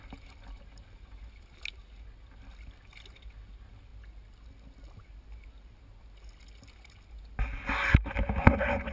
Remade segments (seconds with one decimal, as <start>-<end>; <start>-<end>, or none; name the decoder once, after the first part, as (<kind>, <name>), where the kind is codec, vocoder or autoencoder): none